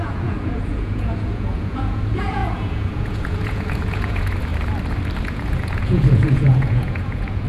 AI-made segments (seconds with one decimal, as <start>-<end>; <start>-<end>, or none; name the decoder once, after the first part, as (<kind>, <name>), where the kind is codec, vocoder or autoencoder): 0.0-4.5 (vocoder, Vocos); 5.2-7.5